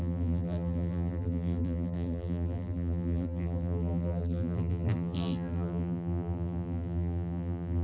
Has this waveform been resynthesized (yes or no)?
yes